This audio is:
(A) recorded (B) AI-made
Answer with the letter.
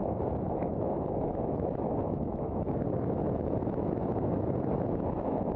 B